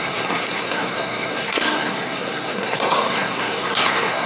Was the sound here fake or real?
fake